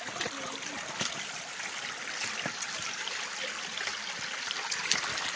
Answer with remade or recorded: recorded